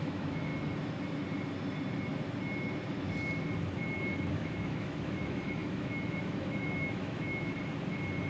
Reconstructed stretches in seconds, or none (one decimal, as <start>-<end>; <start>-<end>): 0.0-0.5; 4.3-7.5